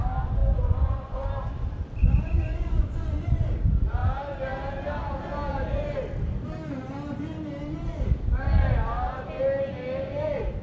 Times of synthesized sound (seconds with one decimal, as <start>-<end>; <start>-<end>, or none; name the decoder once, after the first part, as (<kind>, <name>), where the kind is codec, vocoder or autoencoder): 0.4-1.3 (vocoder, Vocos); 2.0-3.5